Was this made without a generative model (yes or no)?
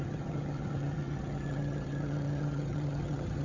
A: no